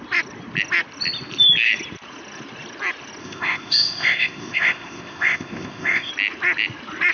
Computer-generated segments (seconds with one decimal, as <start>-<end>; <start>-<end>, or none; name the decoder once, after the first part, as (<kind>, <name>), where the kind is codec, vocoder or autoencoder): 3.2-6.1 (codec, ZipCodec)